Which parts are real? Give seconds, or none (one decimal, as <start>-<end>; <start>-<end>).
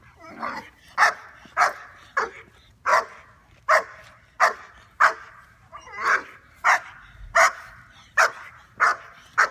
2.9-5.3; 8.9-9.5